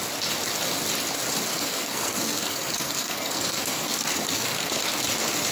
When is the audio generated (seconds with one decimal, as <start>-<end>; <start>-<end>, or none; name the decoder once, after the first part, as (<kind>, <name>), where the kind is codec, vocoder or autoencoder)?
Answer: 1.5-4.8 (codec, SNAC)